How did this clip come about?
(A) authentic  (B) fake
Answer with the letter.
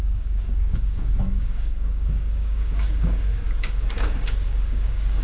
B